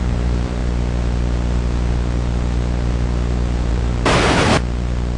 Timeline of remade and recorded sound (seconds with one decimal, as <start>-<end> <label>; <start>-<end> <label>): 0.0-0.6 remade; 0.6-3.7 recorded; 3.7-4.5 remade; 4.5-5.2 recorded